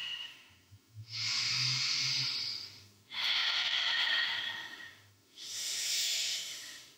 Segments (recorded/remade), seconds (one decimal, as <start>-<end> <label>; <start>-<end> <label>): 0.0-2.1 remade; 2.1-2.8 recorded; 2.8-7.0 remade